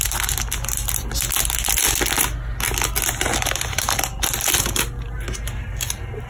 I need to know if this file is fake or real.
real